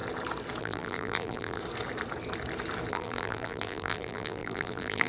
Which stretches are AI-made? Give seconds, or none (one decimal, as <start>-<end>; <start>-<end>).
0.6-1.6; 2.9-5.1